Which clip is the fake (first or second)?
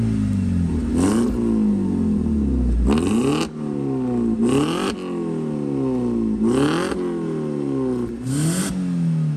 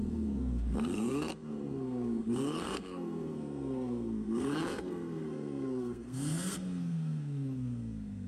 second